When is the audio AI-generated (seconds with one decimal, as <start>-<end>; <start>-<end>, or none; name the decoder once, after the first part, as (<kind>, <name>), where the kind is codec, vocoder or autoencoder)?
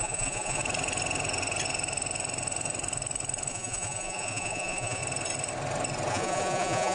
0.0-0.6 (vocoder, Vocos); 3.5-5.0; 6.1-6.9